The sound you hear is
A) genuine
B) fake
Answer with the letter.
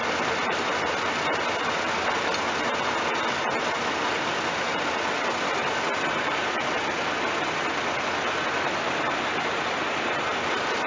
A